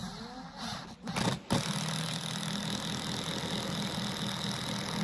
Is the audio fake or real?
real